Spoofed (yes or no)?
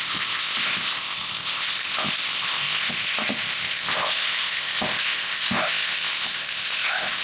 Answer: yes